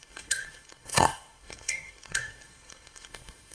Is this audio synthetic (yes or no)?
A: yes